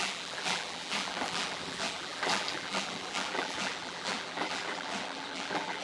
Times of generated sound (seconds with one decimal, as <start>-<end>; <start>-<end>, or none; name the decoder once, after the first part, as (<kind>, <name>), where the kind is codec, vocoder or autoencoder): 0.0-5.8 (vocoder, BigVGAN v2)